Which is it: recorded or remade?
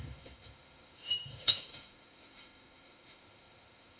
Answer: remade